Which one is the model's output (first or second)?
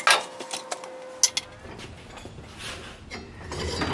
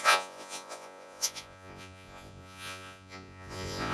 second